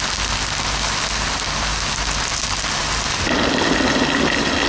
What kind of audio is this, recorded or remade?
recorded